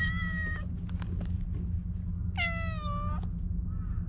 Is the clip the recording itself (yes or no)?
yes